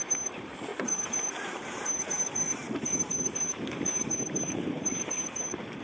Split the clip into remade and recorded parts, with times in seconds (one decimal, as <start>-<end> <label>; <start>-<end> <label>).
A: 0.0-5.8 remade